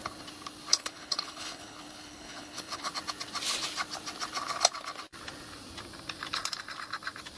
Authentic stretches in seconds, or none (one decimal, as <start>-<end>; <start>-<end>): 0.0-0.7; 2.9-7.4